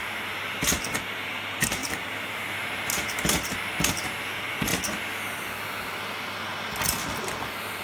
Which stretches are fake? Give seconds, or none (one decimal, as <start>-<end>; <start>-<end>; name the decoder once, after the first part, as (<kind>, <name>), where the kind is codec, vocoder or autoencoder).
0.0-4.7 (vocoder, BigVGAN v2); 7.3-7.8